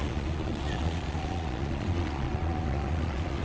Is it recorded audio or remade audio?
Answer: remade